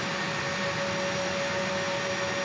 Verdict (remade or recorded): recorded